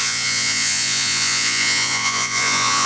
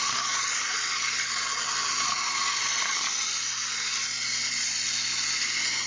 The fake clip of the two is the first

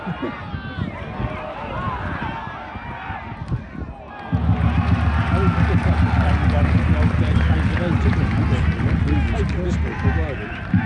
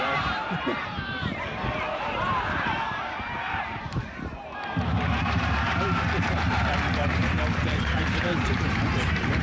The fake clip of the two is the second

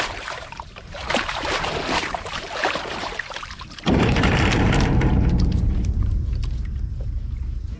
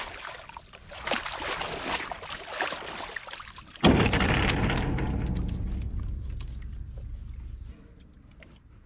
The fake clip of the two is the first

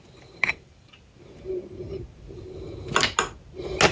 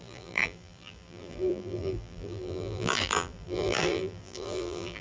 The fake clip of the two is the second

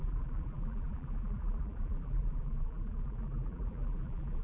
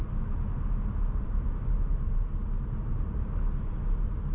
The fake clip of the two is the first